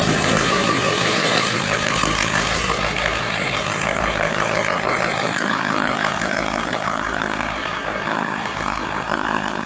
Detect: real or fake fake